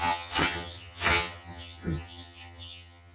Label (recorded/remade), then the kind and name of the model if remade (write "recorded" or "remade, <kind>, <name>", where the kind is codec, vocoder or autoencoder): remade, vocoder, HiFi-GAN